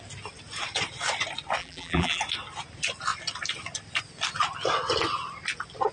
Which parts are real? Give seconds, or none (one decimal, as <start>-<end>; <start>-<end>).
0.0-1.6; 2.2-5.9